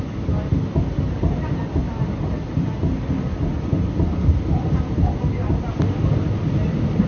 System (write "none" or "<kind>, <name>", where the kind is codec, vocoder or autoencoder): none